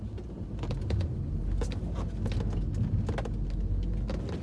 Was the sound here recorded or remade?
recorded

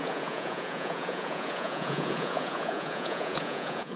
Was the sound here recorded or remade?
remade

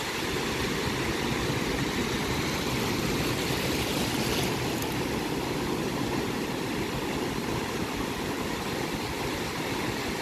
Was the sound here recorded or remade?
recorded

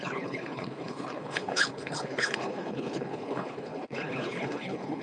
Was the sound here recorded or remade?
remade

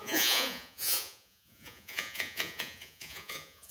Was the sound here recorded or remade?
remade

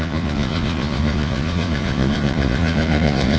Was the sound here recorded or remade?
remade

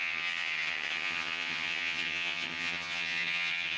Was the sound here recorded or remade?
remade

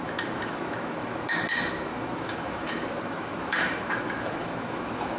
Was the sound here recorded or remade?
remade